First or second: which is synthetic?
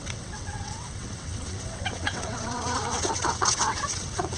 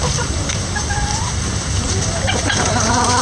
first